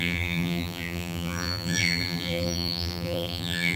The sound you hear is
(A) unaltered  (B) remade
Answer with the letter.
B